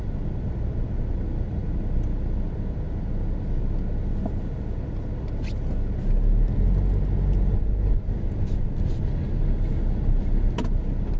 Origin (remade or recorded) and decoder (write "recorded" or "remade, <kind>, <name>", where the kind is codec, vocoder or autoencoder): recorded